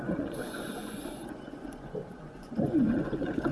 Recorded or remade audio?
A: remade